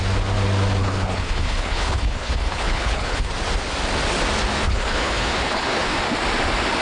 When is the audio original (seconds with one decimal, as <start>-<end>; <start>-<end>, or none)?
0.0-0.8; 3.3-4.5; 6.0-6.8